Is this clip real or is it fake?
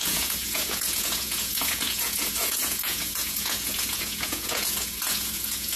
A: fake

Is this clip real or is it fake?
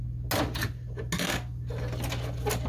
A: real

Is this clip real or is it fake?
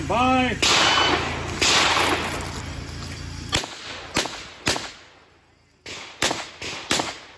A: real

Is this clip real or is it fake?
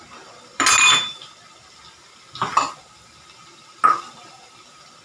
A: real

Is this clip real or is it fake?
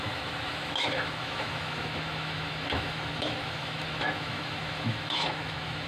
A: fake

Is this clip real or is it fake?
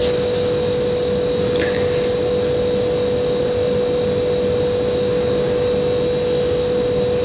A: real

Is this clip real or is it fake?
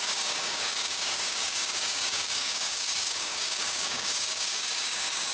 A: fake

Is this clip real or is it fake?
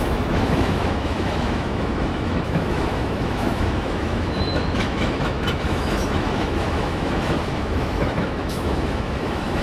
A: fake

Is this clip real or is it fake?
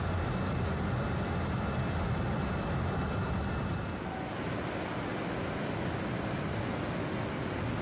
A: real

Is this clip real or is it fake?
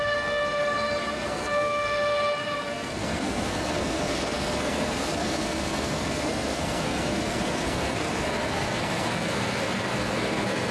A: fake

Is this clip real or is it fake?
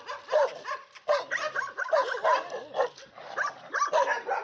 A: real